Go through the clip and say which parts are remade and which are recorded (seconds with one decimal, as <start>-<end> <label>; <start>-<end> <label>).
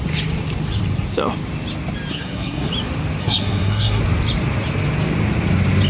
0.0-2.1 recorded; 2.1-2.7 remade; 2.7-3.2 recorded; 3.2-4.0 remade; 4.0-5.9 recorded